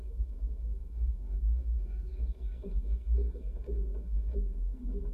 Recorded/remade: remade